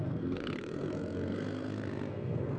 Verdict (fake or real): fake